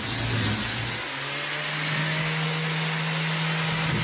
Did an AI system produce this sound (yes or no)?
no